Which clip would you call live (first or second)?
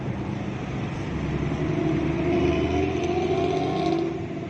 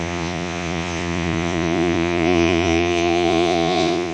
first